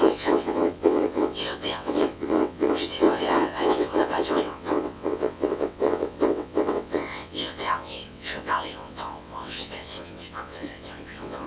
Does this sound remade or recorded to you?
remade